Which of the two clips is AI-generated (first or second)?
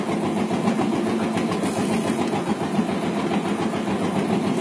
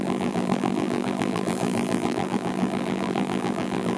second